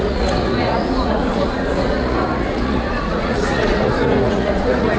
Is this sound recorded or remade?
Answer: remade